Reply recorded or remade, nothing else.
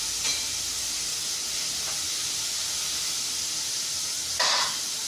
recorded